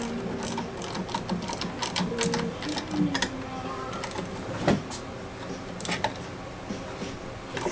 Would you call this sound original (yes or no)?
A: yes